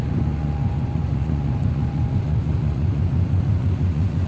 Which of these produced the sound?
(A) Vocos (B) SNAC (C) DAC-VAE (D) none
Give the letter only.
A